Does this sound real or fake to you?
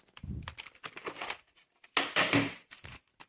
fake